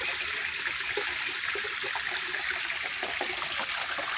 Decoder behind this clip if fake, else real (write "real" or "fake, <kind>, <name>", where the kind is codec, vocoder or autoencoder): real